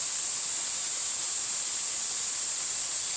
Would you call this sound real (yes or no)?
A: yes